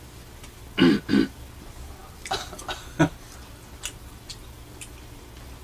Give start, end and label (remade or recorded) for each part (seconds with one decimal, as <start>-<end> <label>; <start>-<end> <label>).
0.0-5.6 recorded